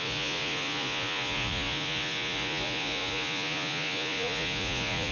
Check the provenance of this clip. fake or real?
fake